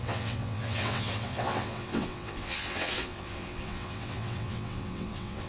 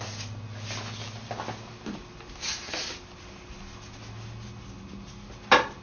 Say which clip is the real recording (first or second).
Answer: second